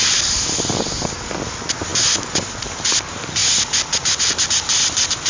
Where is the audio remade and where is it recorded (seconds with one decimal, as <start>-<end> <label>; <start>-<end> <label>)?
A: 0.0-5.3 recorded